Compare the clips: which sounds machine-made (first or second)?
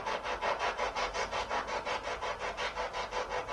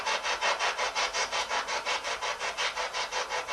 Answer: second